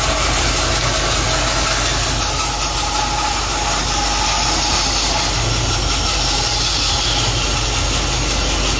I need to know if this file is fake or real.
real